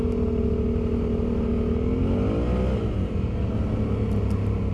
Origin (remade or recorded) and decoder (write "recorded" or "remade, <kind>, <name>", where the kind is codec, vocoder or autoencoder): recorded